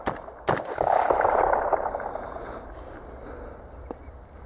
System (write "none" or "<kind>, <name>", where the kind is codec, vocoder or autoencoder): none